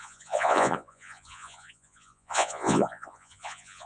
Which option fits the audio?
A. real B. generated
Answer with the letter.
B